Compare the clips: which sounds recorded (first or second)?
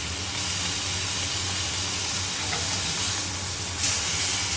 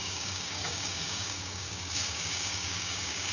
first